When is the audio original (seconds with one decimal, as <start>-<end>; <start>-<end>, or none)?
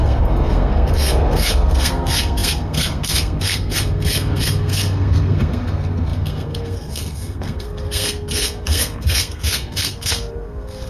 none